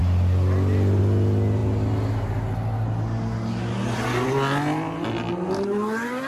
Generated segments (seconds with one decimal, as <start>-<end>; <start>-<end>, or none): none